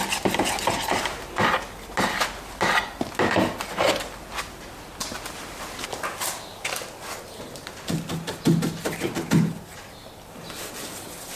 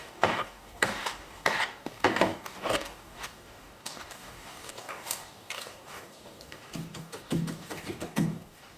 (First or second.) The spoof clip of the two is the second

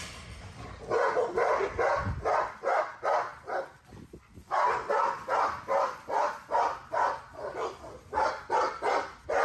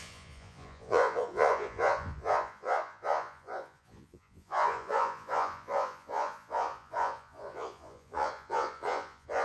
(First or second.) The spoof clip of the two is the second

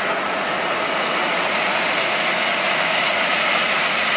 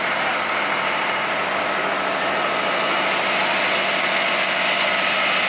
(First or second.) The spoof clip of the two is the first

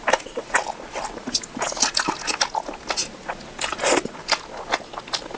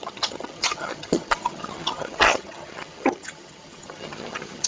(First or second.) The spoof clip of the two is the second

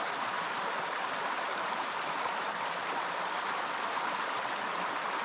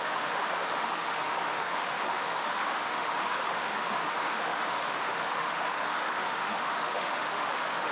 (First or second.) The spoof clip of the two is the second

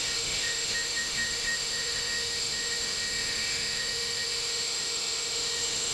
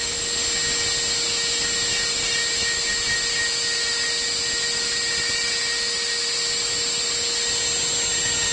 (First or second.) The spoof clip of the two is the first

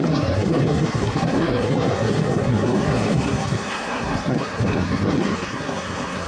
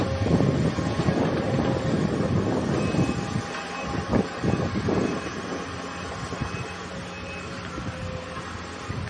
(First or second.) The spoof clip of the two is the first